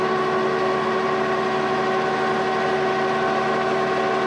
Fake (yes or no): no